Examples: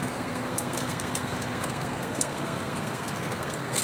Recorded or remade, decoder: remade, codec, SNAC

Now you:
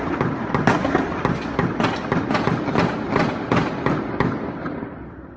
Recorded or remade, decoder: recorded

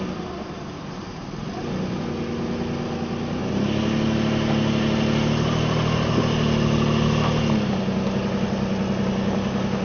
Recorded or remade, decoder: recorded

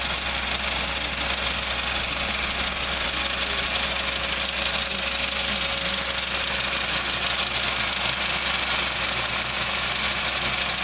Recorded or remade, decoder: recorded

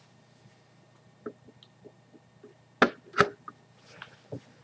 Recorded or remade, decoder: recorded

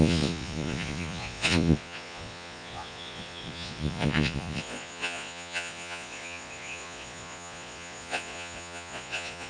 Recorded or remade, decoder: remade, vocoder, Vocos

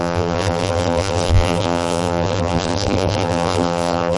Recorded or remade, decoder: remade, vocoder, BigVGAN v2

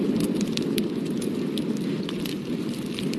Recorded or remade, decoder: recorded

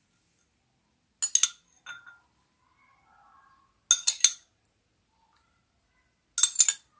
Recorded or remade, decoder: recorded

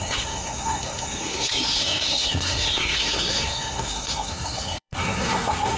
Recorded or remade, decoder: remade, codec, SNAC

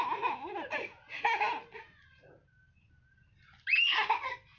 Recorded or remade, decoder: recorded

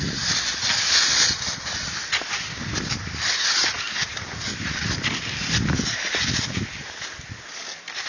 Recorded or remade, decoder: recorded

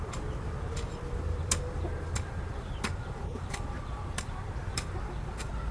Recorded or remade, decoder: remade, vocoder, BigVGAN v2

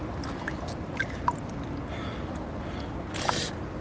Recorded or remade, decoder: recorded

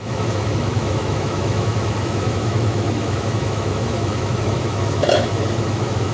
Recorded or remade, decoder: remade, autoencoder, DAC-VAE